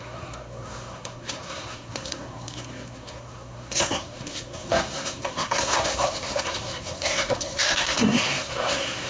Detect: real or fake fake